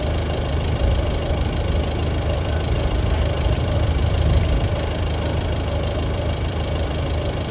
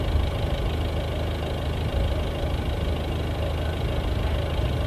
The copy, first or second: first